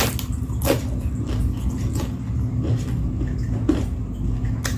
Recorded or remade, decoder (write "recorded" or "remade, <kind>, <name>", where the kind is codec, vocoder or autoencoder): recorded